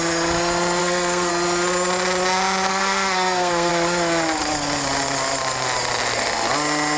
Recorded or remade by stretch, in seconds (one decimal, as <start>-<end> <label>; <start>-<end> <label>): 0.0-0.8 recorded; 0.8-1.3 remade; 1.3-2.7 recorded; 2.7-3.7 remade; 3.7-7.0 recorded

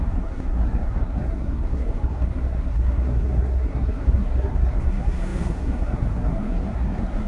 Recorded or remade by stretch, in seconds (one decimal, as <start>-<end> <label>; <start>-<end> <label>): 0.0-7.3 remade

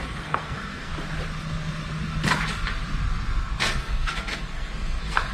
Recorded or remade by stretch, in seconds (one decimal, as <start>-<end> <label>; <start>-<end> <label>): 0.0-0.9 remade; 0.9-3.6 recorded; 3.6-5.3 remade

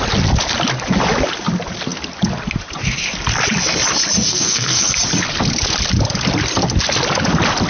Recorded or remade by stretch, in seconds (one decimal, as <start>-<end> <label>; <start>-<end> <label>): 0.0-4.3 recorded; 4.3-4.9 remade; 4.9-7.7 recorded